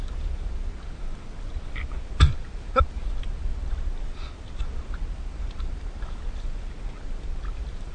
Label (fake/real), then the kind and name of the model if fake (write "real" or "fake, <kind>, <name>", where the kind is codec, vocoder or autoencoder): real